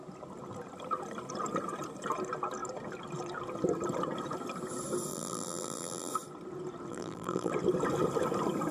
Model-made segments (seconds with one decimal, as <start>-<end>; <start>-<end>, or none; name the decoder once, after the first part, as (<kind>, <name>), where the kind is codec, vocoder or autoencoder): 5.1-6.1 (vocoder, BigVGAN v2); 6.9-7.5